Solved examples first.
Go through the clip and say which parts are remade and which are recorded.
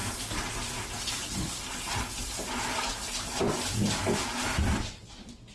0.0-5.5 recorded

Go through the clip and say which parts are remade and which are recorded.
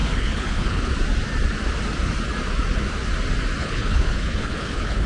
0.0-0.9 remade; 0.9-3.6 recorded; 3.6-5.1 remade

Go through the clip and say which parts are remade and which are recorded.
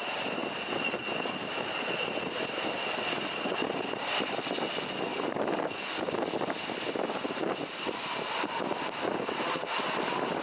0.0-10.4 recorded